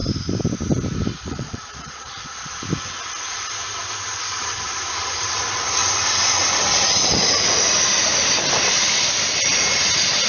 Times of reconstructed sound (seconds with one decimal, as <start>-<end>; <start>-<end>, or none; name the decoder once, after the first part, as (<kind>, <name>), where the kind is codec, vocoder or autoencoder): 1.1-2.5 (vocoder, Vocos)